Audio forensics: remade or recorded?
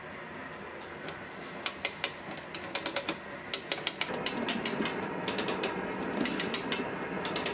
recorded